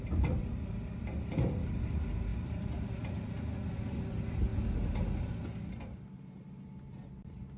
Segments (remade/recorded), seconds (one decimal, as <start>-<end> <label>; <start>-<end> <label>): 0.0-2.3 recorded; 2.3-3.5 remade; 3.5-7.6 recorded